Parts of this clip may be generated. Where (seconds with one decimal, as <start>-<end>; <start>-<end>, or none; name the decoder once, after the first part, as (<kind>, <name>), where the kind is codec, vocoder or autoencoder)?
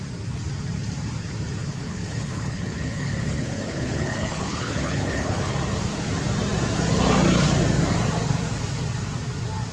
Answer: 1.6-5.5 (codec, HILCodec)